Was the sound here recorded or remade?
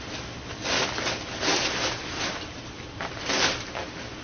recorded